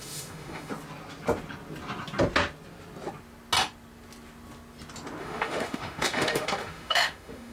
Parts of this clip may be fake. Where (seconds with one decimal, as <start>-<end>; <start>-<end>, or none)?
0.0-0.7; 5.2-7.5